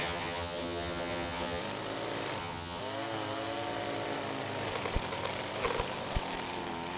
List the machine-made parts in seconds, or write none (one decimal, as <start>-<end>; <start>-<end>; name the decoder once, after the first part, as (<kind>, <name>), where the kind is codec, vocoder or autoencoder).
0.0-1.6 (vocoder, HiFi-GAN); 2.4-2.8